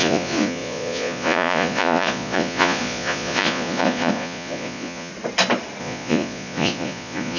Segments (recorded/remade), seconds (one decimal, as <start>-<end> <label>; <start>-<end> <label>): 0.0-5.1 remade; 5.1-5.8 recorded; 5.8-7.4 remade